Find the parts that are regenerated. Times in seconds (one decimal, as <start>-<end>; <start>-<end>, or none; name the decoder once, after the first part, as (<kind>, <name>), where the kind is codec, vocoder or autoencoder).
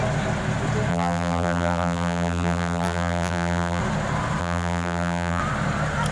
0.9-3.8 (vocoder, BigVGAN v2); 4.4-5.4